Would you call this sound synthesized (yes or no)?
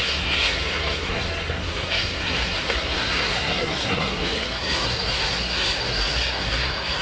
yes